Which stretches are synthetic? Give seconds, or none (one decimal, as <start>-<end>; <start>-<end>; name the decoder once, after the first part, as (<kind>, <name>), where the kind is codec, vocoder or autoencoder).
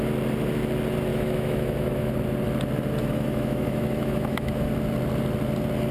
1.1-2.1 (autoencoder, DAC-VAE); 3.0-4.7